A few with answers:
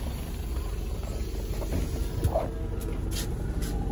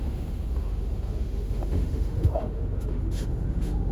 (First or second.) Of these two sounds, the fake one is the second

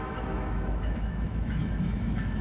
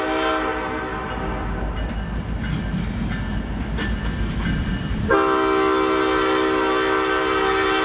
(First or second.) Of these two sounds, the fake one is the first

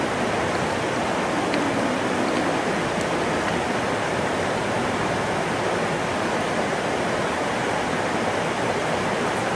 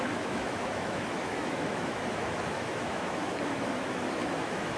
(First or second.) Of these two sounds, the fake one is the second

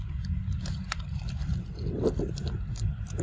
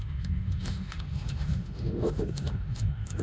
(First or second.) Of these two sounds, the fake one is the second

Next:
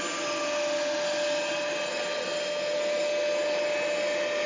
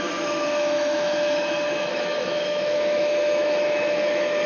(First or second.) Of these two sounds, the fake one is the second